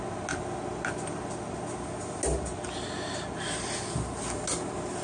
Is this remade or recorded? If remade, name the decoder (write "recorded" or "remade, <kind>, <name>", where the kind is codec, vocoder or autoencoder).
recorded